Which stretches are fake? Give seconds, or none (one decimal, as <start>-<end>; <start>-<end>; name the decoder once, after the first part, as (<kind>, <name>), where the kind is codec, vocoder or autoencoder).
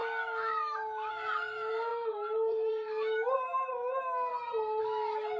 0.0-4.3 (autoencoder, DAC-VAE); 4.8-5.4